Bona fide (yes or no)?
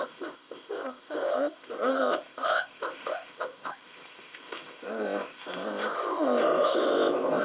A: no